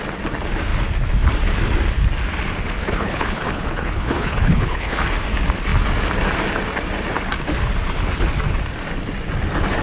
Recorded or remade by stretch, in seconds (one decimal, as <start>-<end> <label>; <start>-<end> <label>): 0.0-2.8 recorded; 2.8-5.0 remade; 5.0-9.8 recorded

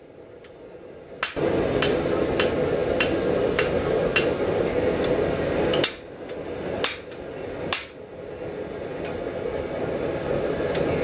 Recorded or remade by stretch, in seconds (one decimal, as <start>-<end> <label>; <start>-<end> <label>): 0.0-11.0 recorded

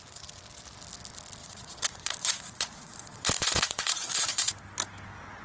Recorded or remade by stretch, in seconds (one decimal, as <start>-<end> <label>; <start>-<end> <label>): 0.0-1.4 recorded; 1.4-4.5 remade; 4.5-5.4 recorded

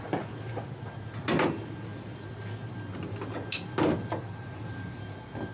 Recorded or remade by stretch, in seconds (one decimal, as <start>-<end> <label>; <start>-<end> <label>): 0.0-5.5 recorded

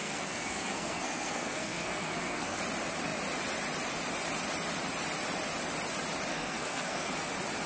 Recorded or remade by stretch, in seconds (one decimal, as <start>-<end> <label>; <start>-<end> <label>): 0.0-2.6 remade; 2.6-6.3 recorded; 6.3-7.1 remade; 7.1-7.7 recorded

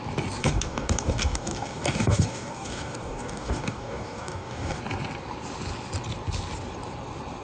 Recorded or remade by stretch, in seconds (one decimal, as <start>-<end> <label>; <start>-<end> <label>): 0.0-0.4 recorded; 0.4-4.8 remade; 4.8-7.4 recorded

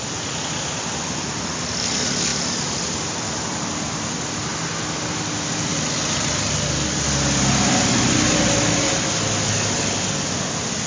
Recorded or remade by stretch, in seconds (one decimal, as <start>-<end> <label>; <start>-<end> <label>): 0.0-10.9 recorded

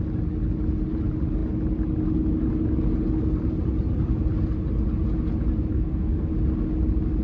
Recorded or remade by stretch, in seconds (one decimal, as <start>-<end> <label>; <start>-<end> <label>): 0.0-5.7 recorded; 5.7-6.3 remade; 6.3-7.2 recorded